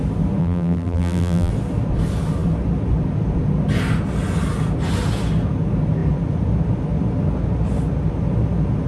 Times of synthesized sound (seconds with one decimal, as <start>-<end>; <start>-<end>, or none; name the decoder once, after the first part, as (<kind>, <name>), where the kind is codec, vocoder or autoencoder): 0.4-1.5 (vocoder, BigVGAN v2)